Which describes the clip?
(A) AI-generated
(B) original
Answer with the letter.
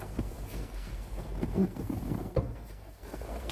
A